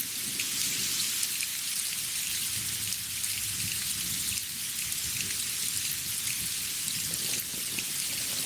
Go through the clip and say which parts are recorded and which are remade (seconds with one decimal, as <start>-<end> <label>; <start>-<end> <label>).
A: 0.0-8.5 recorded